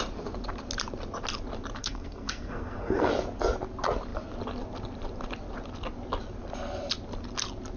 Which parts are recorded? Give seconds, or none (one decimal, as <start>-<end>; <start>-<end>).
0.0-1.8; 3.1-7.8